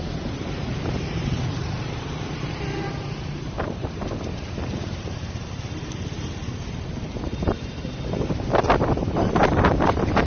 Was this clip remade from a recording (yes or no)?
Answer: yes